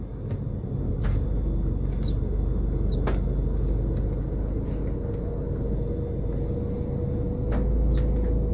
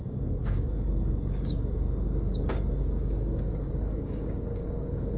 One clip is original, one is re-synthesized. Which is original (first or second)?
first